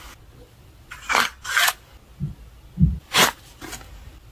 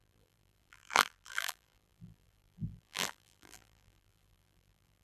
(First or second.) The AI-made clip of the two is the second